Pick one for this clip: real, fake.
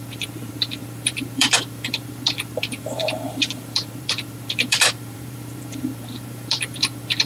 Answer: fake